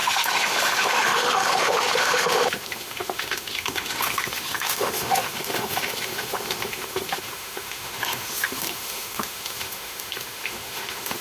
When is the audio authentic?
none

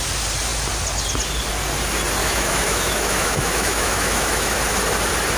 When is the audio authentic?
0.0-2.2; 4.6-5.4